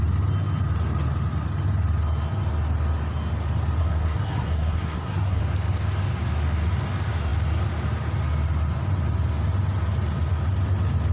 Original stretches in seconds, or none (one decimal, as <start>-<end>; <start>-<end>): 0.0-3.8; 5.4-11.1